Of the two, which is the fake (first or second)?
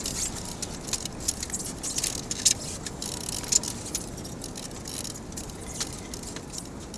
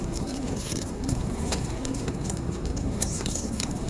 second